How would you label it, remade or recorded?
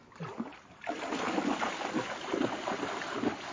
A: recorded